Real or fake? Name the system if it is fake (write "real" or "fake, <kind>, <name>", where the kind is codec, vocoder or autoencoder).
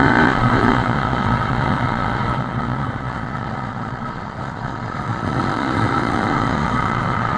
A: fake, vocoder, Vocos